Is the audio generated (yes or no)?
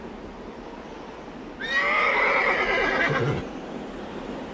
no